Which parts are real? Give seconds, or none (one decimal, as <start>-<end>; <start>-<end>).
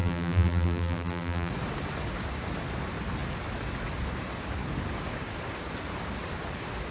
1.5-6.9